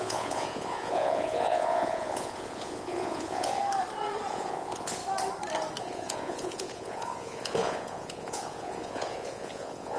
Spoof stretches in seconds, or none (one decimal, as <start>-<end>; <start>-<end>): 0.0-3.6; 4.3-5.0; 5.8-10.0